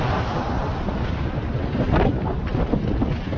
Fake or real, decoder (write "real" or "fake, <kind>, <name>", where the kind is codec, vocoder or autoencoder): real